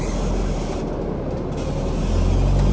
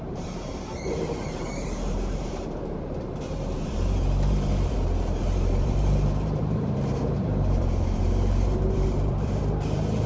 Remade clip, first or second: second